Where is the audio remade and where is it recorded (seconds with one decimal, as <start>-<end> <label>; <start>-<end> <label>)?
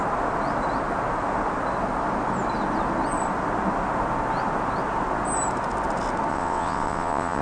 0.0-6.3 recorded; 6.3-7.4 remade